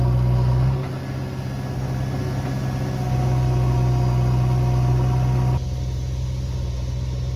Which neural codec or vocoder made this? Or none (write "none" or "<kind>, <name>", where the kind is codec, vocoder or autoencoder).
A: none